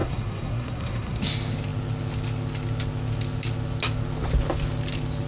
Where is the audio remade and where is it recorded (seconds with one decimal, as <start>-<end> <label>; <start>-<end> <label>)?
0.0-1.2 remade; 1.2-5.3 recorded